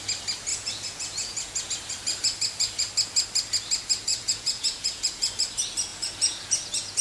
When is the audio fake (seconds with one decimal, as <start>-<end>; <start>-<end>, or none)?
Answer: 0.5-1.7; 4.1-5.3; 5.9-7.0